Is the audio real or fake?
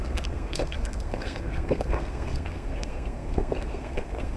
fake